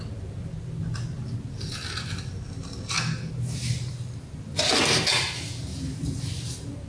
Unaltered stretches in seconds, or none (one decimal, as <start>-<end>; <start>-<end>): 0.0-6.9